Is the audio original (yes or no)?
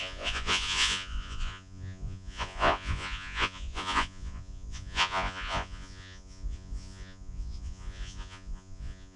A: no